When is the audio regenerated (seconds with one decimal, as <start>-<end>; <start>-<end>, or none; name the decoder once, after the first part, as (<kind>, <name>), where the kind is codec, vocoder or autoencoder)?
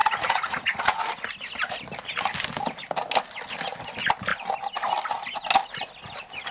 0.0-1.0 (vocoder, Vocos)